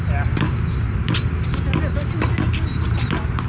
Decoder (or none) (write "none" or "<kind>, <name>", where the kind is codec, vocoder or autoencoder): none